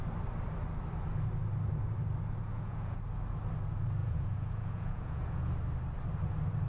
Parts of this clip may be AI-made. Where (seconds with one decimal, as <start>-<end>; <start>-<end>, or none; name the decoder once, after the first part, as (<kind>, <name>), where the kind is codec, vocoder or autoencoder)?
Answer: 2.5-3.0 (vocoder, Vocos); 4.0-5.5